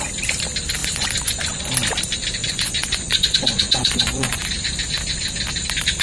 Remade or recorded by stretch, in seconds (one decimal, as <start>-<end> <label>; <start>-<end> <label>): 0.0-0.8 recorded; 0.8-1.6 remade; 1.6-2.4 recorded; 2.4-4.4 remade; 4.4-6.0 recorded